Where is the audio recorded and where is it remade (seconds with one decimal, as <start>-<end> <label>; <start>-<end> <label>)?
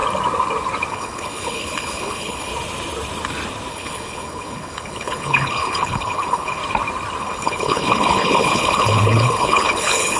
0.0-0.9 recorded; 0.9-2.5 remade; 2.5-3.7 recorded; 3.7-6.6 remade; 6.6-7.2 recorded; 7.2-10.2 remade